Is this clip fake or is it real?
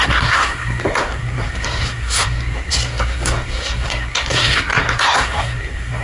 fake